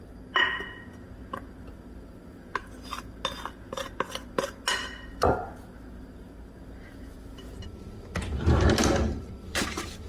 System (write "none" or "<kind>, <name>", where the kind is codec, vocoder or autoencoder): none